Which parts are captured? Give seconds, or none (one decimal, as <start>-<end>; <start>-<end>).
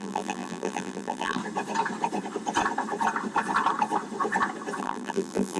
1.4-4.8